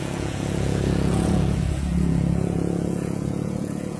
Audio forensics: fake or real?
fake